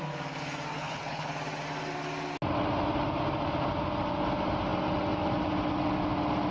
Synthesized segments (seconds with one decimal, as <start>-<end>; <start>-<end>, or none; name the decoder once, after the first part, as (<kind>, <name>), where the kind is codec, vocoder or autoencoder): 0.8-1.3 (codec, HILCodec)